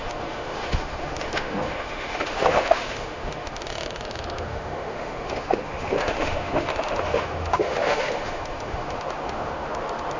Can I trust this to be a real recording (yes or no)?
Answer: no